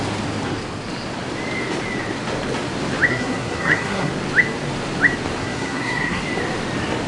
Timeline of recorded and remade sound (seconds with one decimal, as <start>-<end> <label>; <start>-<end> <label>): 0.0-3.1 recorded; 3.1-4.1 remade; 4.1-5.4 recorded; 5.4-6.2 remade; 6.2-7.1 recorded